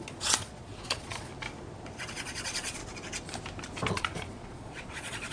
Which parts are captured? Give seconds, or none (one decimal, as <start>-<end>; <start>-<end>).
1.3-2.1; 2.8-3.9